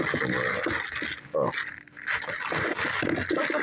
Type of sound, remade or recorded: recorded